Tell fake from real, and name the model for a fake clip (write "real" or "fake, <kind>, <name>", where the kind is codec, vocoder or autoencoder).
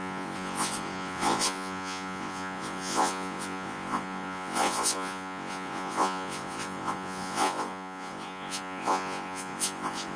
fake, vocoder, Vocos